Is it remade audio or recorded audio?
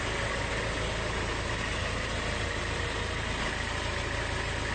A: recorded